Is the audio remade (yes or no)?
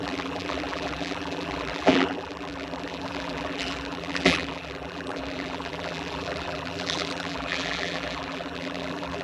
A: yes